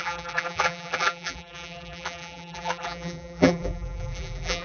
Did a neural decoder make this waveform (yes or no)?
yes